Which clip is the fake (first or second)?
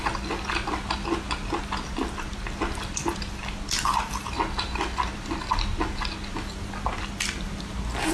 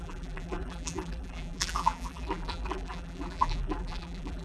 second